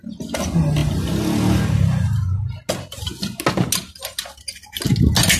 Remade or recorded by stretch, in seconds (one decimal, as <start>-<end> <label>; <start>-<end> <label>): 0.0-5.4 recorded